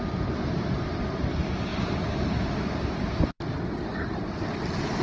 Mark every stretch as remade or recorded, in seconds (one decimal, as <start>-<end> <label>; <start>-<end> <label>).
0.0-5.0 recorded